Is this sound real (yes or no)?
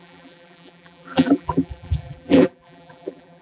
no